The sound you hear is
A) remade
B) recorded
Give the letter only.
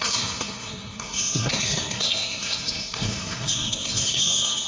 A